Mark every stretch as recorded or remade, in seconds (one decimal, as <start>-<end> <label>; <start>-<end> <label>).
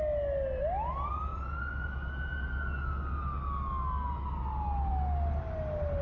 0.0-6.0 recorded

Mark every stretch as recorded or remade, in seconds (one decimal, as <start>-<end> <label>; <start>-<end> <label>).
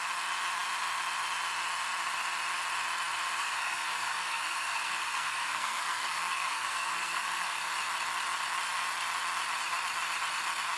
0.0-3.4 recorded; 3.4-7.7 remade; 7.7-10.8 recorded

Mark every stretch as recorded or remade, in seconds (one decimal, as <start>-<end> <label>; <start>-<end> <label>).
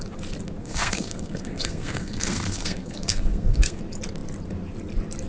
0.0-0.6 recorded; 0.6-3.8 remade; 3.8-5.3 recorded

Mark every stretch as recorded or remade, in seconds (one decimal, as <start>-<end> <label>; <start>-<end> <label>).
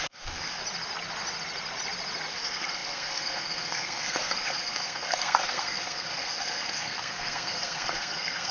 0.0-0.6 remade; 0.6-2.3 recorded; 2.3-8.5 remade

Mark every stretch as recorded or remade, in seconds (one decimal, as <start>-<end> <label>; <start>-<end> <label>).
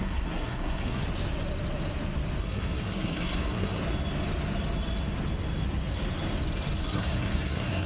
0.0-1.0 remade; 1.0-2.4 recorded; 2.4-3.8 remade; 3.8-6.8 recorded; 6.8-7.9 remade